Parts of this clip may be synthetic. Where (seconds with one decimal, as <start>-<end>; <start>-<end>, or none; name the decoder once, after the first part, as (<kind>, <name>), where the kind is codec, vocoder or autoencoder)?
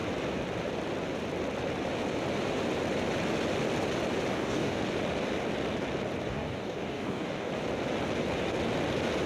4.3-4.8 (codec, DAC); 6.3-7.5